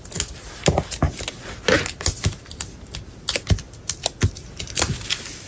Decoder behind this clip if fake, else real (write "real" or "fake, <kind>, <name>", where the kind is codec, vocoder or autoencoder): real